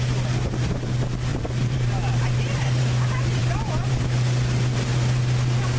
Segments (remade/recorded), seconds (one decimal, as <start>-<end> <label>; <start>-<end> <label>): 0.0-1.3 recorded; 1.3-2.8 remade; 2.8-5.8 recorded